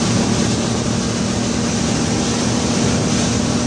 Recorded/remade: recorded